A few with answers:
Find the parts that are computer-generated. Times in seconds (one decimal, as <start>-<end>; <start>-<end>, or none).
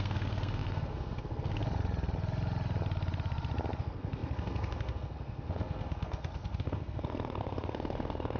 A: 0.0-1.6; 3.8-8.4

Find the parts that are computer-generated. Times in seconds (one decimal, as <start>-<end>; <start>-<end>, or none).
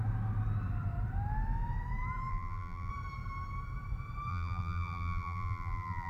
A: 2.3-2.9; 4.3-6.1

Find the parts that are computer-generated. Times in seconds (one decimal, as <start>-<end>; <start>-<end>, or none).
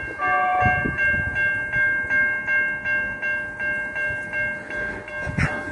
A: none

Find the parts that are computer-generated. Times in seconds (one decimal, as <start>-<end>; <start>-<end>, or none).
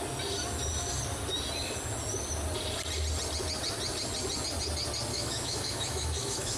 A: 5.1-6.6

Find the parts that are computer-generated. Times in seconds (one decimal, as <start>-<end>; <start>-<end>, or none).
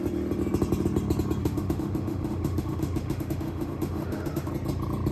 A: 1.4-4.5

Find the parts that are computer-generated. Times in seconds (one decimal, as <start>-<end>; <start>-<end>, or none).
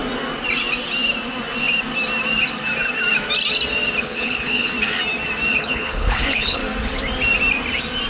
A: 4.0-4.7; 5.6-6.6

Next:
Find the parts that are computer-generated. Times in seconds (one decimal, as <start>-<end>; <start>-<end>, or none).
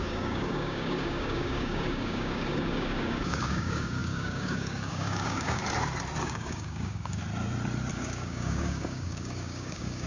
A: 0.0-5.6; 6.2-7.2; 7.9-10.1